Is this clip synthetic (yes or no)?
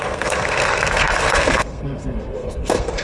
yes